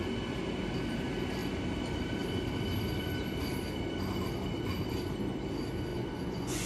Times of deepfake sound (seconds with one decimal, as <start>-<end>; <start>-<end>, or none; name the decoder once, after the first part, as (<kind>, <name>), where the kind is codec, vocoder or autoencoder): 5.9-6.7 (vocoder, Vocos)